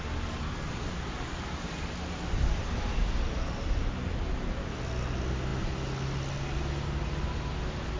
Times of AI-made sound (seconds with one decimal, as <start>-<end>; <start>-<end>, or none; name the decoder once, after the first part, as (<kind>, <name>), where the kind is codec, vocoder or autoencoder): none